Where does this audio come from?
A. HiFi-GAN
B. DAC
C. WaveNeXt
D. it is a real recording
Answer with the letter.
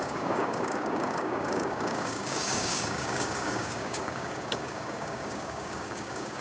B